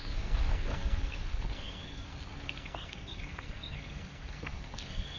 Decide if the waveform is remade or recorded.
remade